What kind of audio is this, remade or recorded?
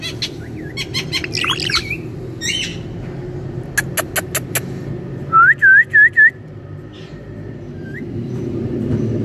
recorded